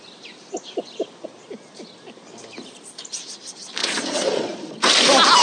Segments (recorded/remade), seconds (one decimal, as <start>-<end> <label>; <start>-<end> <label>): 0.0-3.8 recorded; 3.8-4.6 remade; 4.6-5.4 recorded